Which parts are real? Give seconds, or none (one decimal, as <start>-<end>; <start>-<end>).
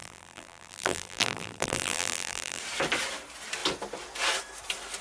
2.6-5.0